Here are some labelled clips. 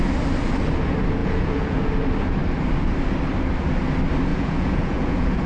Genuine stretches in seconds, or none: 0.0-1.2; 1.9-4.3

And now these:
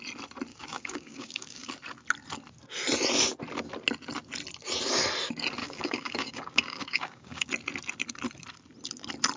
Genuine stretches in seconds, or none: 0.0-0.5; 1.7-5.6; 7.5-9.4

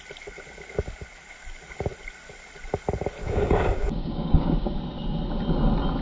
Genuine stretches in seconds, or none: 0.0-3.2; 4.8-6.0

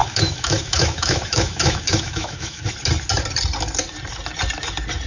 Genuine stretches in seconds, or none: 2.7-5.1

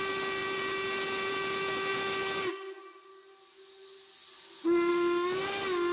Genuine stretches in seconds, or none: 0.0-5.9